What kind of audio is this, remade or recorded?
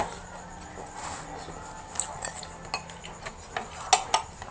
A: recorded